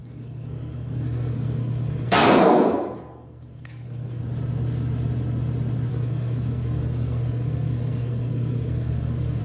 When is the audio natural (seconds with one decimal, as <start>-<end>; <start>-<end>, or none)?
4.2-5.9